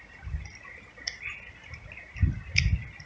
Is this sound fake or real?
real